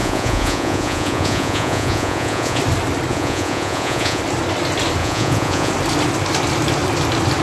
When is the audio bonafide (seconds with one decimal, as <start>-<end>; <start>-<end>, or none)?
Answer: 2.6-3.1; 4.2-5.0; 5.7-7.4